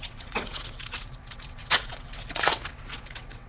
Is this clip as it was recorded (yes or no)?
no